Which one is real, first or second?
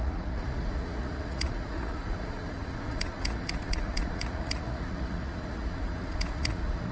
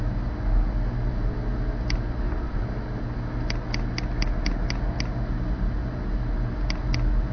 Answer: second